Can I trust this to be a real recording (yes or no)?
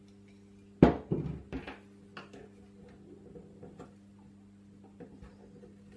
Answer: yes